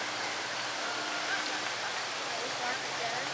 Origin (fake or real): real